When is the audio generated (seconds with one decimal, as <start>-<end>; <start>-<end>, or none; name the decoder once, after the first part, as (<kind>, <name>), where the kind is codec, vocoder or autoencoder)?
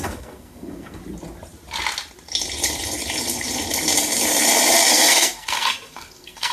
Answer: 0.0-1.0 (codec, SNAC); 4.9-6.5